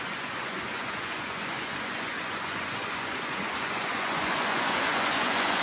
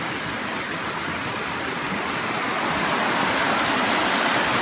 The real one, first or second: second